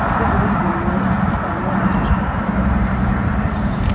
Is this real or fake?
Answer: real